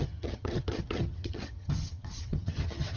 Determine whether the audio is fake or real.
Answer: fake